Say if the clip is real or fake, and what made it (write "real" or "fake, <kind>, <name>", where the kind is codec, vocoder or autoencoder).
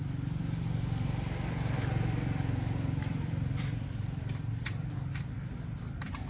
fake, vocoder, BigVGAN v2